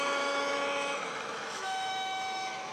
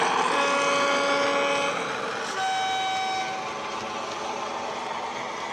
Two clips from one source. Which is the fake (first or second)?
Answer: first